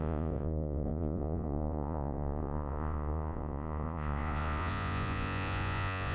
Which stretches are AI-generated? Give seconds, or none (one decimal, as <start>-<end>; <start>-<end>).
0.0-6.1